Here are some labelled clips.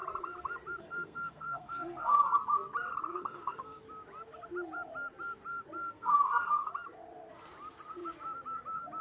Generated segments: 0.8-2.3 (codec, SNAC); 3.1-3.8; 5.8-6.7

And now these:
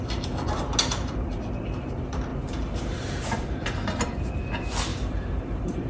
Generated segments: 2.3-4.3 (vocoder, BigVGAN v2); 4.9-5.9

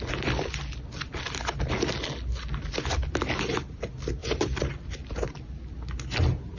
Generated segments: 4.2-4.8 (vocoder, BigVGAN v2)

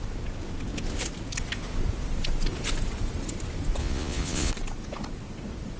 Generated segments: 3.8-4.5 (vocoder, Vocos)

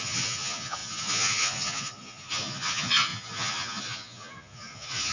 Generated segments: 0.0-5.1 (vocoder, Vocos)